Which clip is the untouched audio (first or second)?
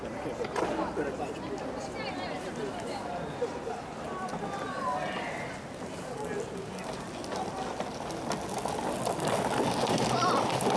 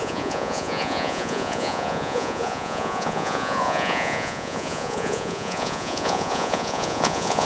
first